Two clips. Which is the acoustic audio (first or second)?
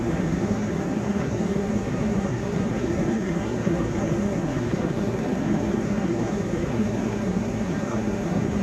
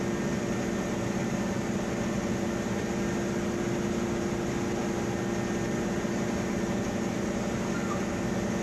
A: second